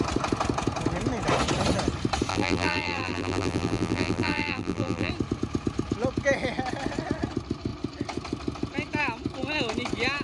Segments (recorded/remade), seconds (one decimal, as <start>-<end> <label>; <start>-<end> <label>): 0.0-2.3 recorded; 2.3-5.1 remade; 5.1-10.2 recorded